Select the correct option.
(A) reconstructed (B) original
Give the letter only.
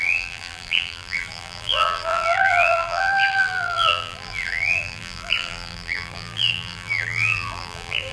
A